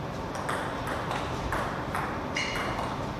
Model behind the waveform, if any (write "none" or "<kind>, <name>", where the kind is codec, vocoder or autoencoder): none